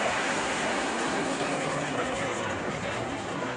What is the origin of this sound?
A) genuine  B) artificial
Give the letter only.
B